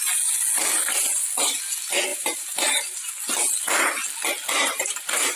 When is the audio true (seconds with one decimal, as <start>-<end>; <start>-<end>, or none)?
0.0-2.1; 3.1-4.6